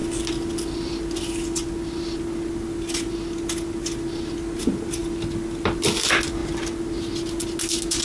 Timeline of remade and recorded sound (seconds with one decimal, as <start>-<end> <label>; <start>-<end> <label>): 0.0-8.0 recorded